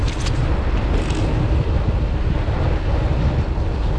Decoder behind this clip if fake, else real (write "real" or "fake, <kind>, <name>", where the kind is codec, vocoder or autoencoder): real